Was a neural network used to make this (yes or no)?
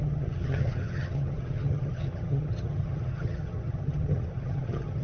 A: yes